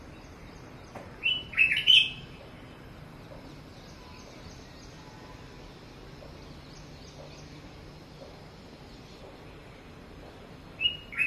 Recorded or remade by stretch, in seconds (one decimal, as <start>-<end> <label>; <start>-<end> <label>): 0.0-0.4 recorded; 0.4-1.9 remade; 1.9-11.3 recorded